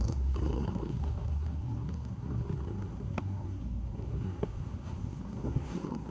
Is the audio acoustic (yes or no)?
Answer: no